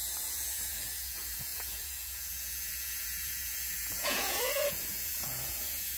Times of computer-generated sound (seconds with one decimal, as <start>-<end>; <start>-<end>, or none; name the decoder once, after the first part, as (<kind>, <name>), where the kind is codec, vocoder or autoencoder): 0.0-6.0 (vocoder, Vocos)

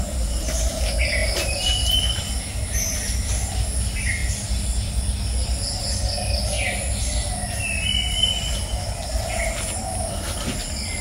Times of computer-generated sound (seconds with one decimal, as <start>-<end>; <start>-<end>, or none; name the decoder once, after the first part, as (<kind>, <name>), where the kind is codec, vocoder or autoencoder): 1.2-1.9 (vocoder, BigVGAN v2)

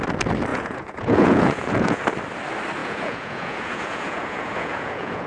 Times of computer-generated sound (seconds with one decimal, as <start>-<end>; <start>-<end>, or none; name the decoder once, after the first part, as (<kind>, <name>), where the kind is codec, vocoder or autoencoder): 0.5-2.0 (vocoder, Vocos); 2.8-5.3